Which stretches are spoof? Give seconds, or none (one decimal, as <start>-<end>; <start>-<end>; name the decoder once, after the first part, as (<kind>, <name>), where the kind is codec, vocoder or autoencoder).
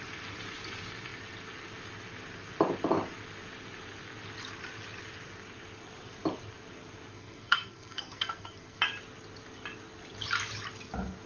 7.1-8.8 (codec, SNAC)